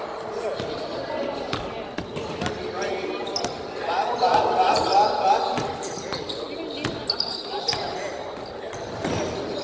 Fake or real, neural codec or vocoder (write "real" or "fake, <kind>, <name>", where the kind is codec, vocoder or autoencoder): real